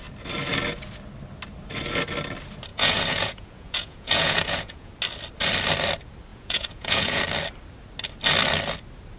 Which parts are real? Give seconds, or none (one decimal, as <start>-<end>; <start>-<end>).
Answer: 0.0-2.7; 4.9-6.3; 7.2-9.2